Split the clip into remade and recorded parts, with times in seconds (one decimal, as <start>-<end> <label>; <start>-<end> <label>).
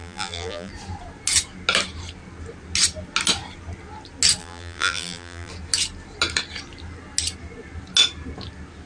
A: 0.0-0.7 remade; 0.7-4.4 recorded; 4.4-5.5 remade; 5.5-8.9 recorded